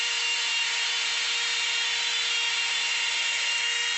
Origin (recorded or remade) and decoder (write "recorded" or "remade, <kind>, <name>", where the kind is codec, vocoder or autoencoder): recorded